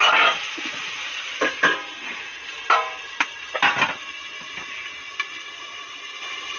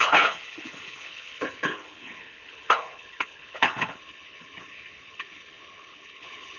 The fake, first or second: second